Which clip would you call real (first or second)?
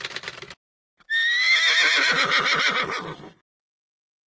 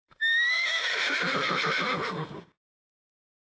first